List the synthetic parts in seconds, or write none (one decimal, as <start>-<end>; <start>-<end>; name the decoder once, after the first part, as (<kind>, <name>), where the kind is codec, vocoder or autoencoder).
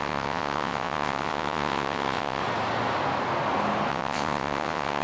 0.0-2.4 (vocoder, WaveNeXt); 3.9-5.0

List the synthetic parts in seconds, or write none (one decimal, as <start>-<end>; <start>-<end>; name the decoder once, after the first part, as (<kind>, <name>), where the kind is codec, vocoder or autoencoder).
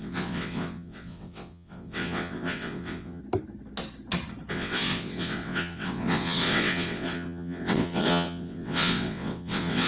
0.0-3.2 (vocoder, WaveNeXt); 4.5-9.9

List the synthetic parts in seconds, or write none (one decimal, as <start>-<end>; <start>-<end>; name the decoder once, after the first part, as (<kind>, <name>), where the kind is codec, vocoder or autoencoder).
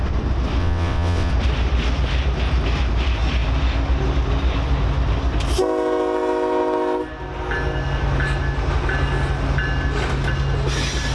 0.6-1.3 (vocoder, WaveNeXt)